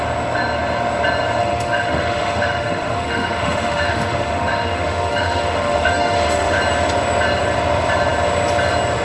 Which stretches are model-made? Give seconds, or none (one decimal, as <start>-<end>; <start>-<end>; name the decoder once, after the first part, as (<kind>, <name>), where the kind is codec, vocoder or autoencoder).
1.4-6.6 (autoencoder, DAC-VAE)